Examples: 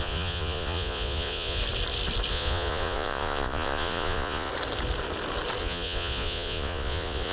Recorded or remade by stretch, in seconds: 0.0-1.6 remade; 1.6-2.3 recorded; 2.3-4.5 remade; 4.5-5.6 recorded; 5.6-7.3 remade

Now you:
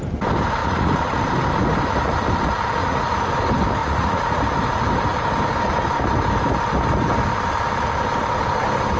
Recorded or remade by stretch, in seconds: 0.0-0.6 recorded; 0.6-1.2 remade; 1.2-2.8 recorded; 2.8-3.3 remade; 3.3-3.8 recorded; 3.8-4.4 remade; 4.4-9.0 recorded

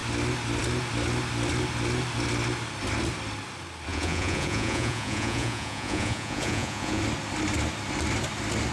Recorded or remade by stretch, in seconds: 0.0-3.9 recorded; 3.9-7.0 remade; 7.0-8.7 recorded

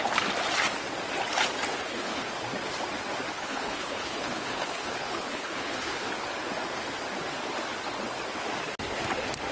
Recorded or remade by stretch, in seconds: 0.0-1.7 recorded; 1.7-2.3 remade; 2.3-3.3 recorded; 3.3-6.1 remade; 6.1-9.5 recorded

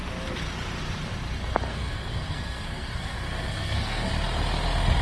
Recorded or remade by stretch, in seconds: 0.0-1.7 recorded; 1.7-4.1 remade; 4.1-5.0 recorded

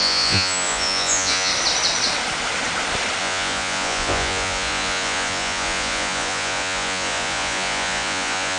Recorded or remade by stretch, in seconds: 0.0-1.5 remade; 1.5-3.2 recorded; 3.2-8.6 remade

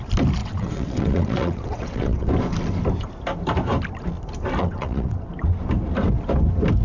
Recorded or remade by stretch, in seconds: 0.0-0.4 recorded; 0.4-2.3 remade; 2.3-4.6 recorded; 4.6-5.3 remade; 5.3-6.8 recorded